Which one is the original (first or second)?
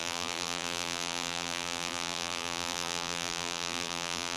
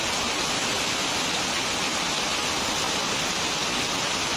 second